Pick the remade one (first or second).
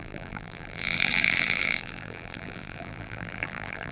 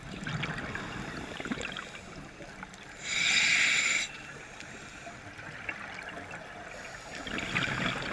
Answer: first